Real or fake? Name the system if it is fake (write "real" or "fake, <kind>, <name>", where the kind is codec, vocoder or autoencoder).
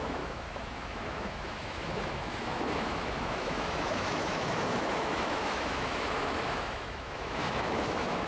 fake, autoencoder, DAC-VAE